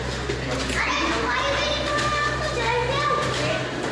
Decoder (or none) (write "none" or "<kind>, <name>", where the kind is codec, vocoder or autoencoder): none